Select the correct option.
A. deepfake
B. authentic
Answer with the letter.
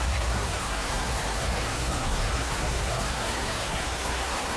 A